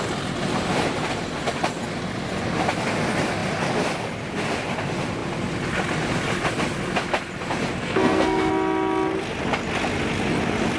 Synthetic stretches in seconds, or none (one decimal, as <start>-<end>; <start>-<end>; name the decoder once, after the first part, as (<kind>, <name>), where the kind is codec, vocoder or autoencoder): 7.8-8.5 (codec, SNAC)